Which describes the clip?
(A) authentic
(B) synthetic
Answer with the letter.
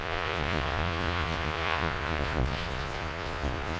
B